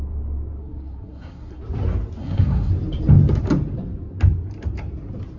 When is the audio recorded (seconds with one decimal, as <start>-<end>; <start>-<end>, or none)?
0.0-0.6; 1.6-2.2; 2.7-5.4